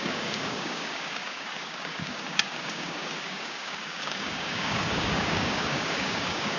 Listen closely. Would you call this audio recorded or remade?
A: remade